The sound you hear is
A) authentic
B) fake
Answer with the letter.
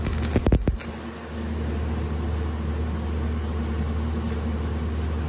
A